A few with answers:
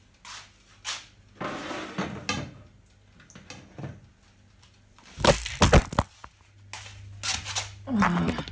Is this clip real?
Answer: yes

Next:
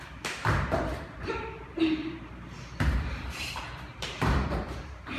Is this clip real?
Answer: no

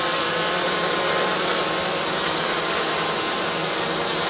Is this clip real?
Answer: yes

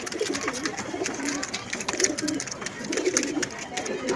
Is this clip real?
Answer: yes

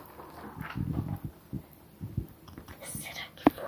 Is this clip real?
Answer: yes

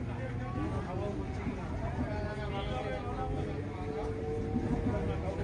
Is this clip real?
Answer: yes